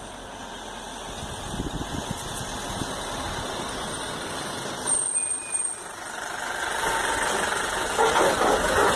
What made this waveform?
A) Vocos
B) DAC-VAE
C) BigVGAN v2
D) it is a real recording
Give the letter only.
D